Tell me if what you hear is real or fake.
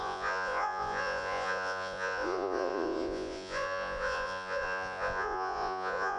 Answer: fake